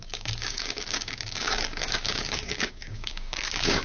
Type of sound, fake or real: fake